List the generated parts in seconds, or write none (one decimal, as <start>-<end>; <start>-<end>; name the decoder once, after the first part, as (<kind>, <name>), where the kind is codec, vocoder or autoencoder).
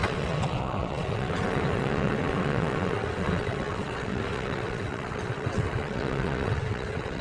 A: 0.0-7.2 (vocoder, WaveNeXt)